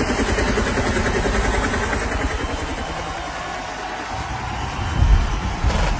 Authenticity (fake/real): real